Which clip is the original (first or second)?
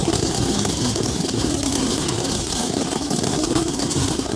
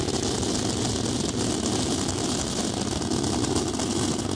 second